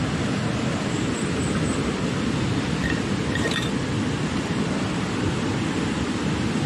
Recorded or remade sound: recorded